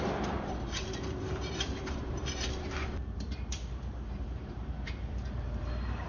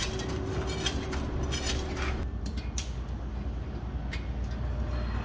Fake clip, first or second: first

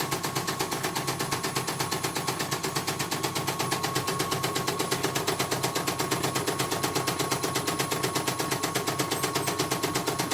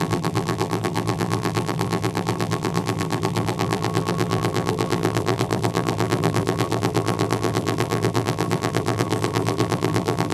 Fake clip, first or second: second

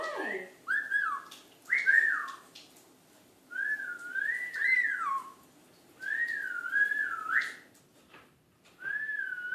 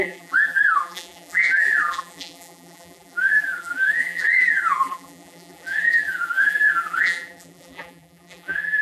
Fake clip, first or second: second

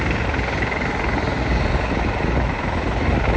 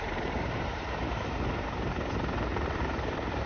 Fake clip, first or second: second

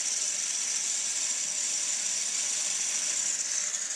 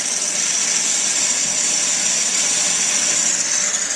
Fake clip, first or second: first